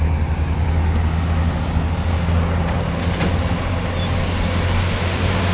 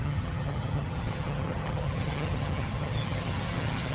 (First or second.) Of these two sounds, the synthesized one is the second